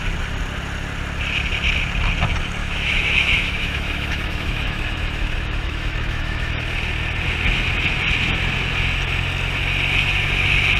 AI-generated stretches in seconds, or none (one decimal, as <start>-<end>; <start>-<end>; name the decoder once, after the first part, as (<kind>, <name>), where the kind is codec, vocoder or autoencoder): 2.6-6.5 (autoencoder, DAC-VAE)